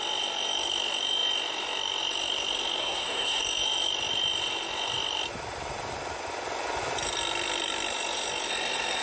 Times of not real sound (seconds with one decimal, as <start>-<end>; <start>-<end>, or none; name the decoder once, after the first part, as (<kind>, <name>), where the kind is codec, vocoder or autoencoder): 2.8-3.4 (codec, SNAC)